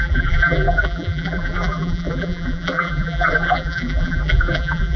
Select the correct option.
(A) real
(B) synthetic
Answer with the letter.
B